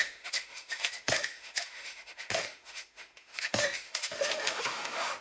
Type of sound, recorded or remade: remade